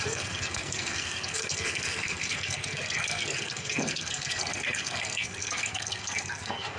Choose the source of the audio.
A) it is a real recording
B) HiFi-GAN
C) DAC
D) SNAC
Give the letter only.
D